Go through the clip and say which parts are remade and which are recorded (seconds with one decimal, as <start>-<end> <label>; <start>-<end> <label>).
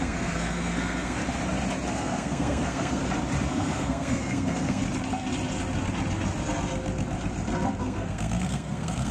0.0-1.2 remade; 1.2-1.9 recorded; 1.9-3.0 remade; 3.0-3.5 recorded; 3.5-4.8 remade; 4.8-7.8 recorded; 7.8-9.1 remade